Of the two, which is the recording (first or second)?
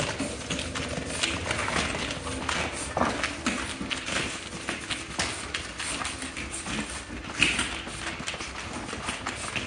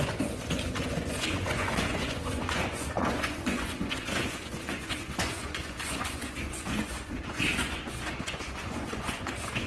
first